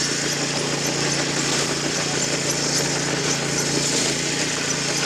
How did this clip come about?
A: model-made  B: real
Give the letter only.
B